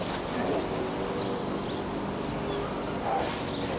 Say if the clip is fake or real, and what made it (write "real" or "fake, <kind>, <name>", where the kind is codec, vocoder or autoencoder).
real